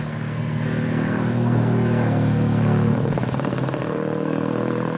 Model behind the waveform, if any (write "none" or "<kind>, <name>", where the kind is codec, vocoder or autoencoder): codec, SNAC